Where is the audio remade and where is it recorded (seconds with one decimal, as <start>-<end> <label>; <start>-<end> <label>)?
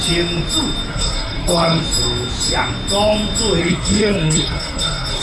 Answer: 0.0-0.9 recorded; 0.9-1.8 remade; 1.8-3.6 recorded; 3.6-5.2 remade